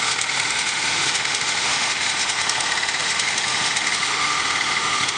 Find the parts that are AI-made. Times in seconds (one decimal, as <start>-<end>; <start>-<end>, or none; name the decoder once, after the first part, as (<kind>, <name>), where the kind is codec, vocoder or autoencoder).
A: 0.0-5.2 (autoencoder, DAC-VAE)